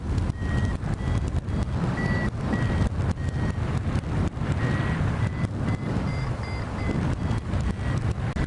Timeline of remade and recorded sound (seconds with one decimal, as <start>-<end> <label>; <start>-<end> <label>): 0.0-8.5 recorded

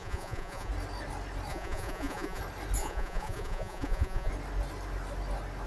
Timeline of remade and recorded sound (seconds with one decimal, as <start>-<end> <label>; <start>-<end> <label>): 0.0-0.7 remade; 0.7-1.5 recorded; 1.5-2.4 remade; 2.4-2.8 recorded; 2.8-4.3 remade; 4.3-5.7 recorded

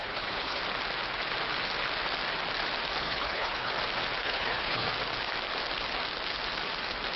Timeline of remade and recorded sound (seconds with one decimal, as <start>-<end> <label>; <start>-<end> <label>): 0.0-0.6 remade; 0.6-3.0 recorded; 3.0-3.7 remade; 3.7-4.2 recorded; 4.2-4.9 remade; 4.9-7.2 recorded

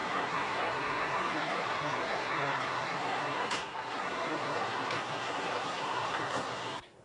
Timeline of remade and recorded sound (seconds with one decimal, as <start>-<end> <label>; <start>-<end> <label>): 0.0-7.0 remade

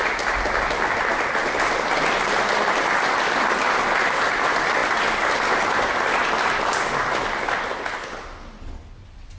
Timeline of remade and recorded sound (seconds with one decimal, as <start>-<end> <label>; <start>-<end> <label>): 0.0-9.4 recorded